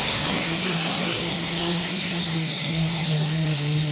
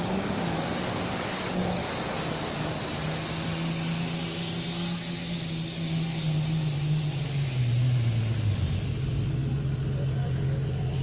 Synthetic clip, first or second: first